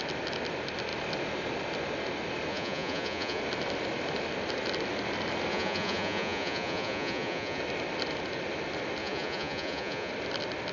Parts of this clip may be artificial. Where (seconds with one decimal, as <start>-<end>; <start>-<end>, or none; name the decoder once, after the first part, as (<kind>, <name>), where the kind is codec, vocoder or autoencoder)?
2.5-3.4 (vocoder, Vocos); 5.5-7.6; 9.0-10.1